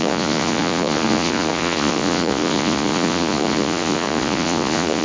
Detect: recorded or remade remade